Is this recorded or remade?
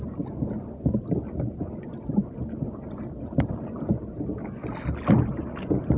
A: recorded